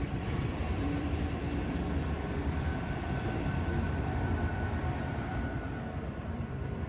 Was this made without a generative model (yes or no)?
no